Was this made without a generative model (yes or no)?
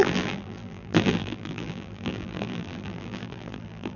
no